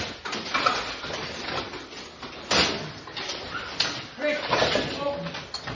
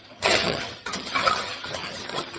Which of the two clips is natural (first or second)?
first